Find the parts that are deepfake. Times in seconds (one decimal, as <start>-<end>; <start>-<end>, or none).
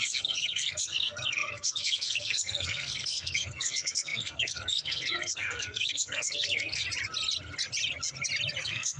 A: 0.0-6.8; 8.6-9.0